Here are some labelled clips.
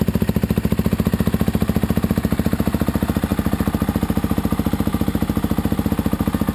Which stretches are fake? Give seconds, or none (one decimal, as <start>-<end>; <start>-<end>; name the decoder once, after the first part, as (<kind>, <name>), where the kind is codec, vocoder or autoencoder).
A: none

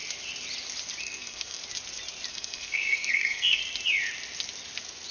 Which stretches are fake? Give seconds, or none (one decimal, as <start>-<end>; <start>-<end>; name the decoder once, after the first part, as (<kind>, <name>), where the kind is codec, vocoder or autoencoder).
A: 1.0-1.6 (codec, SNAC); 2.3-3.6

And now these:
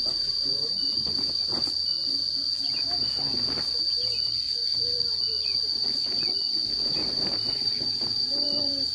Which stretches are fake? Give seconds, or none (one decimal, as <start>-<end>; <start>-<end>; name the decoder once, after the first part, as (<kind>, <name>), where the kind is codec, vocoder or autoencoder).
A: 0.0-1.6 (vocoder, BigVGAN v2); 6.8-8.9

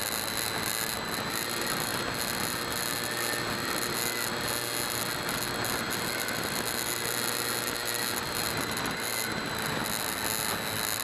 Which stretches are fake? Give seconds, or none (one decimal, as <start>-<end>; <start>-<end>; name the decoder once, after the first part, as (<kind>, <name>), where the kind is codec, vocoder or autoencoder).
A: none

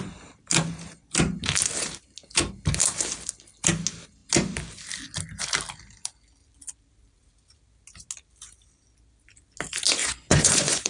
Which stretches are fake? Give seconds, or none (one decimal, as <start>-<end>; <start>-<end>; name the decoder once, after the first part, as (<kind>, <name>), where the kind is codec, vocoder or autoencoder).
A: 10.0-10.9 (vocoder, Vocos)

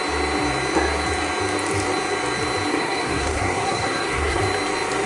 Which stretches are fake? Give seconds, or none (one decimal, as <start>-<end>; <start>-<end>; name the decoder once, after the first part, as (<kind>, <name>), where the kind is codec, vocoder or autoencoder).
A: 2.7-4.4 (codec, SNAC)